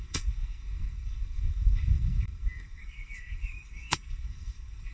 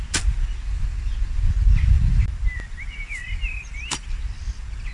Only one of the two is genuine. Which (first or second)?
second